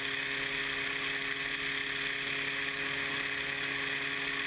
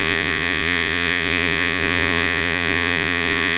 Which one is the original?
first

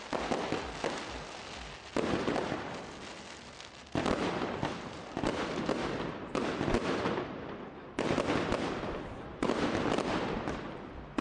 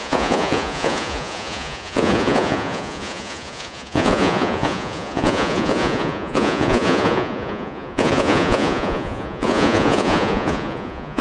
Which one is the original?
first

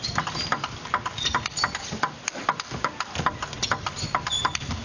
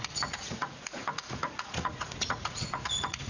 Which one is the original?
first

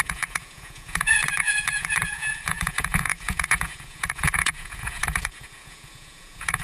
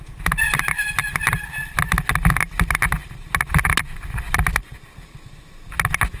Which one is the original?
second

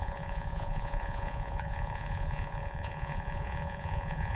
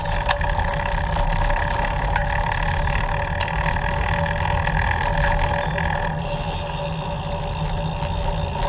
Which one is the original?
second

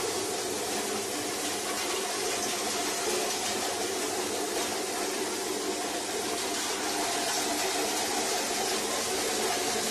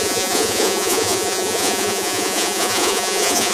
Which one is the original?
first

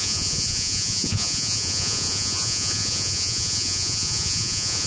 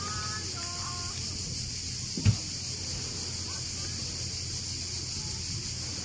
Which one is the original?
second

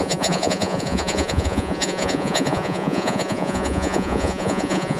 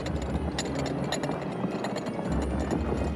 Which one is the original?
second